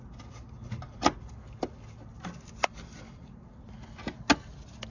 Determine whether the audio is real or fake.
real